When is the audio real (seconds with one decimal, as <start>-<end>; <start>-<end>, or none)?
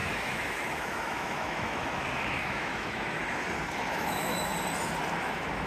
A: 3.2-3.9; 4.5-5.2